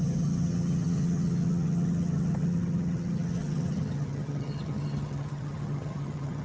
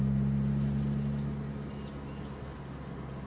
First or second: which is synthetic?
first